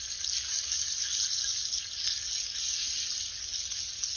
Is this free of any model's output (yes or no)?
yes